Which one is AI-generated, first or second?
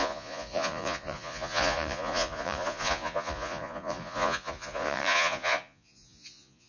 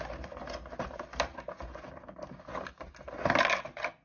first